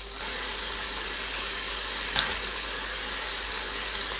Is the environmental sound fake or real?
fake